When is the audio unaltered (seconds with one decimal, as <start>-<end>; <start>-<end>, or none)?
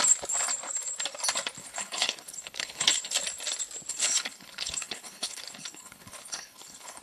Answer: 0.0-1.6; 3.1-3.9